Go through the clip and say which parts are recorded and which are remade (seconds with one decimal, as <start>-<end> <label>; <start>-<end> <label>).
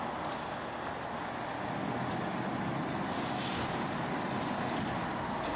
0.0-5.6 recorded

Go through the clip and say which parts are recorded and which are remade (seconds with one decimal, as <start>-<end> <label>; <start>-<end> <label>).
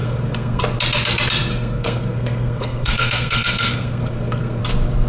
0.0-0.6 remade; 0.6-1.5 recorded; 1.5-4.6 remade; 4.6-5.1 recorded